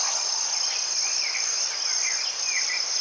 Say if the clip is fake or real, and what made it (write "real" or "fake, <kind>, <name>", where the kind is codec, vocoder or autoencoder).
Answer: real